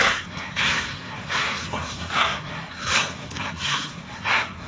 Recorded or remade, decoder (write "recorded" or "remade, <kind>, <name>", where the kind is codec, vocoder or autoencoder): remade, codec, SNAC